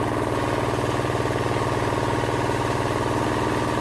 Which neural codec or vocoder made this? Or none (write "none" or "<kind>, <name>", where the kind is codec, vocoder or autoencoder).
none